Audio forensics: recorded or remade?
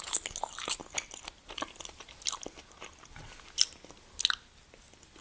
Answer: recorded